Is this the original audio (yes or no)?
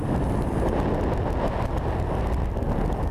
yes